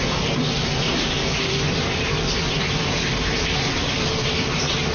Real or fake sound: fake